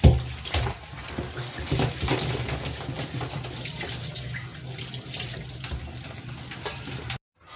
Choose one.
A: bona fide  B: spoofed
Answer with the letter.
A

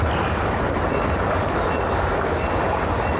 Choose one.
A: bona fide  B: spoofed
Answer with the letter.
A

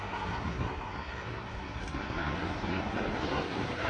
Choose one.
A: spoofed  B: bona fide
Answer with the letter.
A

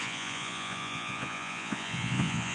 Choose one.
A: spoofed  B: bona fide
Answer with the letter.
A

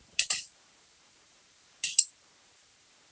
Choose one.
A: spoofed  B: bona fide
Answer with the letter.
A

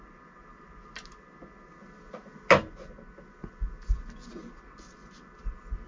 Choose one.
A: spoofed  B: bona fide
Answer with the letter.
B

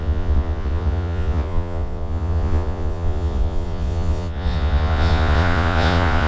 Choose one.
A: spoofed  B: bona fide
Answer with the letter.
A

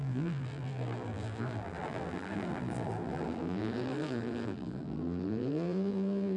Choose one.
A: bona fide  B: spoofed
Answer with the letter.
B